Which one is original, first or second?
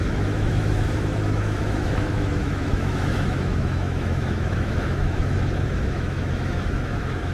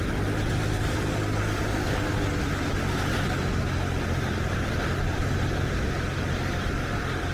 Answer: second